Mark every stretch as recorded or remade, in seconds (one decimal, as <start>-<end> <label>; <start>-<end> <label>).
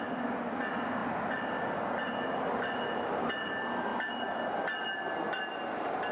0.0-6.1 recorded